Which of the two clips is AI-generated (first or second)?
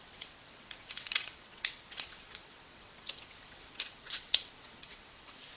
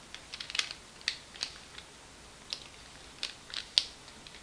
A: first